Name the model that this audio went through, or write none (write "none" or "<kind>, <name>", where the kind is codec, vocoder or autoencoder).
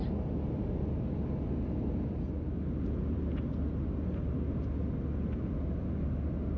none